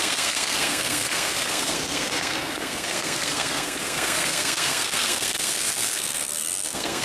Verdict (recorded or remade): remade